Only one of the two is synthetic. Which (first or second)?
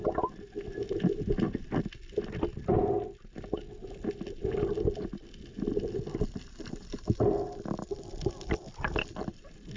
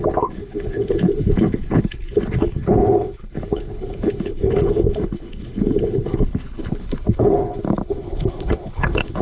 second